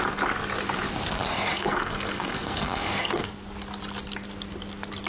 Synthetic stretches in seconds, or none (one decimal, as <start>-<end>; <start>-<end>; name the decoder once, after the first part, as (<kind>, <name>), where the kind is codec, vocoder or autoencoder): 1.5-3.3 (codec, SNAC)